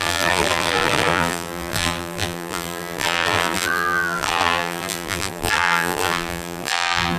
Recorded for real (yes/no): no